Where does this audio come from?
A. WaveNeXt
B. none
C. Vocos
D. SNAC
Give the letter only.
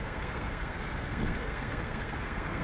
D